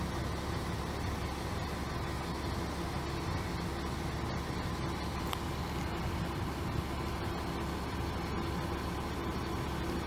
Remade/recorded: recorded